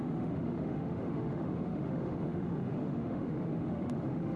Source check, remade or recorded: remade